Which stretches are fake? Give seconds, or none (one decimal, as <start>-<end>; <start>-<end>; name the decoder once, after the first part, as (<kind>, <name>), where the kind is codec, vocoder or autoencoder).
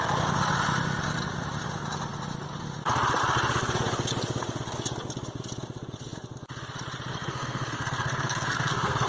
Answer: 7.1-9.1 (codec, SNAC)